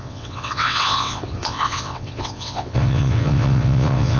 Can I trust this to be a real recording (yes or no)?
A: no